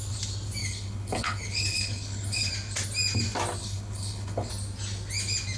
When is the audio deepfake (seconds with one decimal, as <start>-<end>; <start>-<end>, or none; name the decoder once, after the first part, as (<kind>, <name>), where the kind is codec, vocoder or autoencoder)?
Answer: 0.6-2.5 (codec, HILCodec); 3.6-4.5